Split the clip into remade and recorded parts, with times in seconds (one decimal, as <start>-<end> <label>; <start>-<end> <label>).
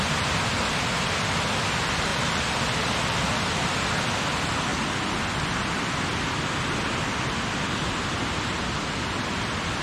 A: 0.0-2.1 recorded; 2.1-3.2 remade; 3.2-9.8 recorded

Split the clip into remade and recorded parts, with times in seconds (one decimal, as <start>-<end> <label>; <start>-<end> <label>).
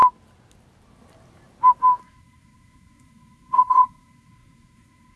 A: 0.0-2.0 recorded; 2.0-5.2 remade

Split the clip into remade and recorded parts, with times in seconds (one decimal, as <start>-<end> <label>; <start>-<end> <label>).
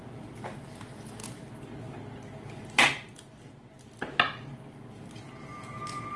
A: 0.0-6.2 recorded